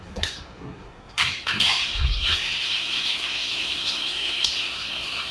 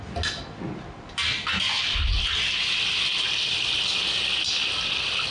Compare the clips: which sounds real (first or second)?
second